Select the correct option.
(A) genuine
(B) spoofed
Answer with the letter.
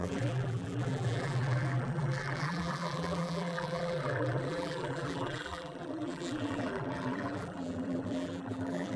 B